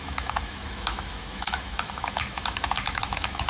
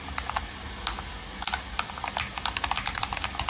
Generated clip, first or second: first